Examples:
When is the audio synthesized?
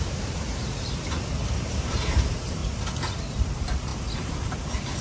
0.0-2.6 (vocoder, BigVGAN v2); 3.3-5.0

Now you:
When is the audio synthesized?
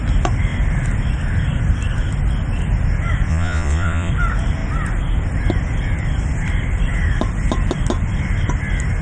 3.3-4.1 (vocoder, Vocos)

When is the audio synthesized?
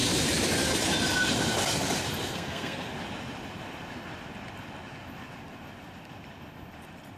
2.3-2.9 (codec, SNAC)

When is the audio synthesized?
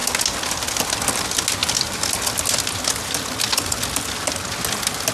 none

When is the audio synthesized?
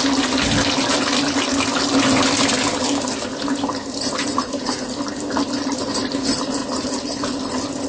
none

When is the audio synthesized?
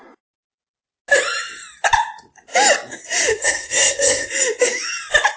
3.3-4.3 (codec, SNAC)